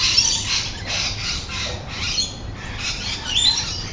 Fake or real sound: real